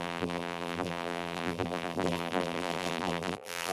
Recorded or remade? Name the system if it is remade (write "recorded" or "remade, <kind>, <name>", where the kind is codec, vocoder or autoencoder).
remade, vocoder, BigVGAN v2